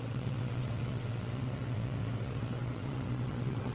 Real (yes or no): no